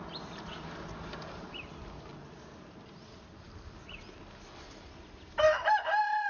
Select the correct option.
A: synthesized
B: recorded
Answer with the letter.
B